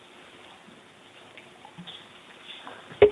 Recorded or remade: recorded